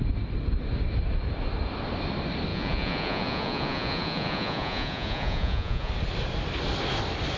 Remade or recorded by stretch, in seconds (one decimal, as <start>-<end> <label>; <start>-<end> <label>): 0.0-2.5 recorded; 2.5-5.9 remade; 5.9-7.4 recorded